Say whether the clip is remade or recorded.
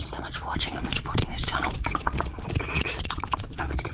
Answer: remade